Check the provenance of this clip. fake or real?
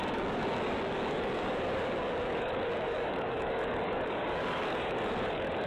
fake